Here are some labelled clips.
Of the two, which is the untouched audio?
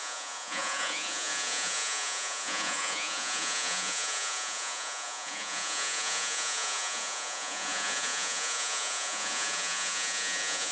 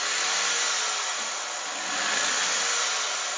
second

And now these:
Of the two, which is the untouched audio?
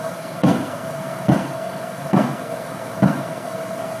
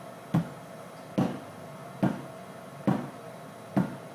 second